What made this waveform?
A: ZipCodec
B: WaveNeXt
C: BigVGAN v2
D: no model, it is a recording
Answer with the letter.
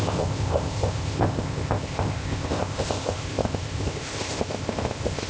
A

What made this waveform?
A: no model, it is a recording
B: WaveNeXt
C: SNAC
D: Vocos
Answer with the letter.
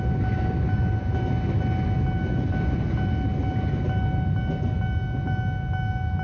A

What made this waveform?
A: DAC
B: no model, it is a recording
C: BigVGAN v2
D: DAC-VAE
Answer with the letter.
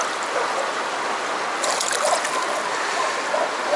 B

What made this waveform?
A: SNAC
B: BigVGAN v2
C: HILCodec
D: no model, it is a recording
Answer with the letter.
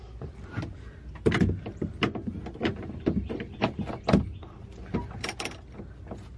D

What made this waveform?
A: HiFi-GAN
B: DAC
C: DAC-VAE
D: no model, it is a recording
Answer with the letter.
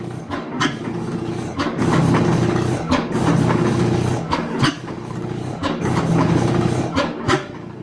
B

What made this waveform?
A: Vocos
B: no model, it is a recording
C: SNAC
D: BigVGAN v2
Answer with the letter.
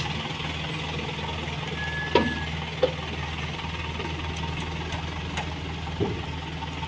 B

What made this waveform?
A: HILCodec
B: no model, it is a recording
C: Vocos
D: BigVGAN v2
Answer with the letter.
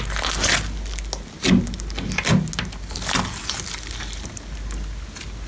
B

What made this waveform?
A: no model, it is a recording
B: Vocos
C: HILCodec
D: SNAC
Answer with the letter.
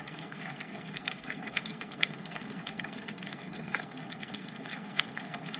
D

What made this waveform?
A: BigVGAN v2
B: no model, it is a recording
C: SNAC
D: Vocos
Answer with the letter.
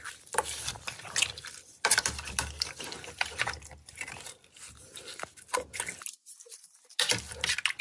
B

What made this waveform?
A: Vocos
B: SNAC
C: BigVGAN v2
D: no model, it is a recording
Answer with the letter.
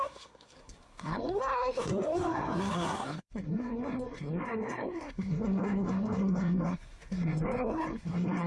B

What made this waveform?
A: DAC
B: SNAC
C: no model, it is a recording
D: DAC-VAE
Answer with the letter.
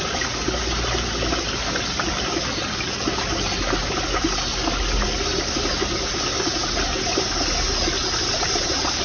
C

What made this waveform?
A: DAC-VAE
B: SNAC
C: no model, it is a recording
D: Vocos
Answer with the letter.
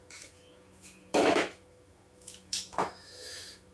A